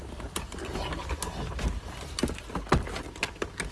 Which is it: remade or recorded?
recorded